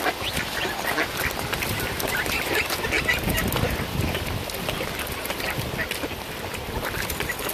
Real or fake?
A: real